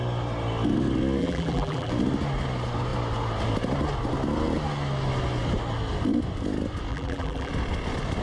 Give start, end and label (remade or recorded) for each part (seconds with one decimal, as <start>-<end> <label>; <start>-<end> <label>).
0.0-1.2 recorded; 1.2-1.9 remade; 1.9-6.9 recorded; 6.9-7.5 remade; 7.5-8.2 recorded